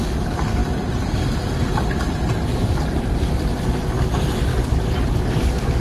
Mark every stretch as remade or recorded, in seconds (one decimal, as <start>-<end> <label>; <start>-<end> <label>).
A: 0.0-5.8 remade